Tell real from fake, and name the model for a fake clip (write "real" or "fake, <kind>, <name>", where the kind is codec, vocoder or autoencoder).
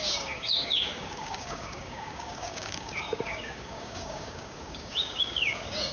fake, codec, DAC